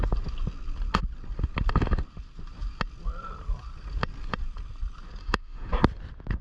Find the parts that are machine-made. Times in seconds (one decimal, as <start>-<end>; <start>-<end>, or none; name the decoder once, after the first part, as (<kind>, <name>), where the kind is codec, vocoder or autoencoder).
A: 5.2-5.7 (autoencoder, DAC-VAE)